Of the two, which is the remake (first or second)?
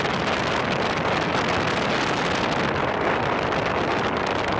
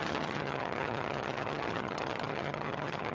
second